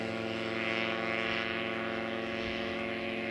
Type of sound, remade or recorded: remade